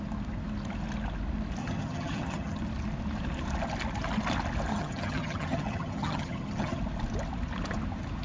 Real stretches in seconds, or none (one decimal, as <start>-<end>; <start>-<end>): 0.0-1.6; 2.6-4.7; 6.8-8.2